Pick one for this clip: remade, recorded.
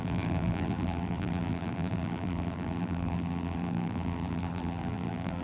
remade